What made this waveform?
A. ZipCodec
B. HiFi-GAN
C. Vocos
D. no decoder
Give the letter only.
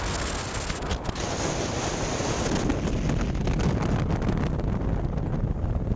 D